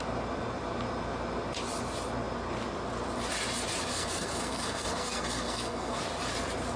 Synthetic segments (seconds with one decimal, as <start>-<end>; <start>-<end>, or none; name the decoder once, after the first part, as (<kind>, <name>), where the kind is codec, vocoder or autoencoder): 3.9-6.0 (codec, SNAC)